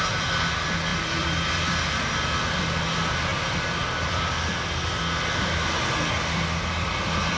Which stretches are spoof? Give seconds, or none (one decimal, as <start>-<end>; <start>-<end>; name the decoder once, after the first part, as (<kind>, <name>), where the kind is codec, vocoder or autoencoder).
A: 0.9-2.6 (vocoder, BigVGAN v2); 3.3-4.5

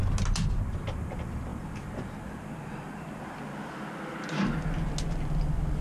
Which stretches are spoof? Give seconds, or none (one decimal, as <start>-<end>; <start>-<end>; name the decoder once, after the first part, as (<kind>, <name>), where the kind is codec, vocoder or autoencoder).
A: none

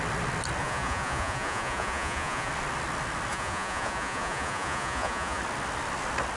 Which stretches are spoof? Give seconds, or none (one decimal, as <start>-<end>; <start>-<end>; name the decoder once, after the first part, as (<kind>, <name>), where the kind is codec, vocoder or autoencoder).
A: 0.6-2.5 (vocoder, Vocos); 3.3-5.4